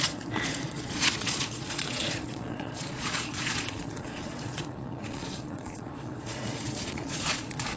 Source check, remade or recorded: remade